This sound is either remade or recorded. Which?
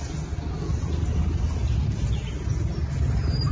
recorded